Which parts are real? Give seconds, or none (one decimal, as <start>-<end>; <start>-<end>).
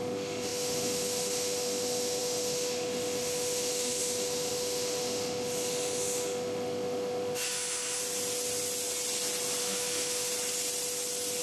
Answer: 8.0-9.6; 10.3-11.4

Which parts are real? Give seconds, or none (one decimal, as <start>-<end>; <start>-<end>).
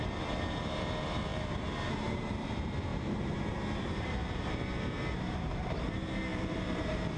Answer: none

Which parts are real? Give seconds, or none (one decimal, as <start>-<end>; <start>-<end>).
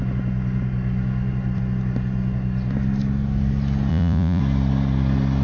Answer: 0.0-3.9; 4.4-5.4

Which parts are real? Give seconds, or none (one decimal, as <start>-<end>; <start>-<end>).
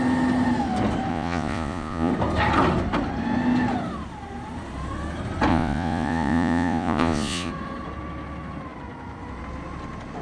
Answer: 0.0-1.1; 2.1-5.5; 7.5-10.2